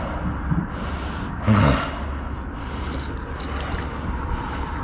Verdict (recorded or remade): recorded